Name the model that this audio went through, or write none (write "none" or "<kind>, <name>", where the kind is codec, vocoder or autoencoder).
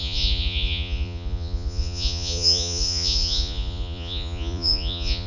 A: vocoder, Vocos